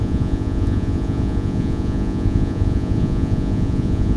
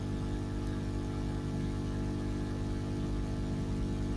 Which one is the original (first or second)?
second